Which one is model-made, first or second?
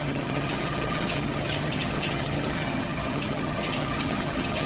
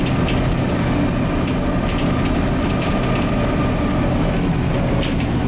first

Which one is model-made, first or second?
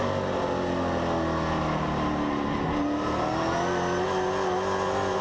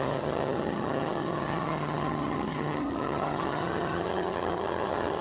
second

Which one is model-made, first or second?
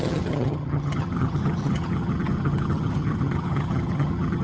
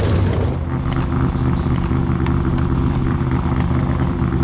first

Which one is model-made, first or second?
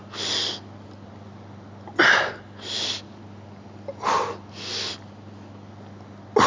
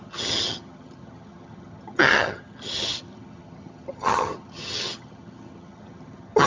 second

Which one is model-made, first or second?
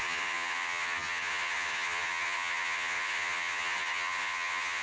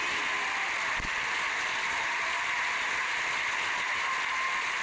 first